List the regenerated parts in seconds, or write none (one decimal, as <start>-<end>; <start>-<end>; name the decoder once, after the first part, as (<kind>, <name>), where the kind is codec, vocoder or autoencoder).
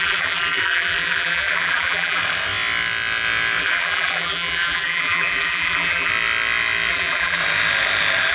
0.0-2.2 (vocoder, BigVGAN v2); 3.6-6.1; 6.9-7.4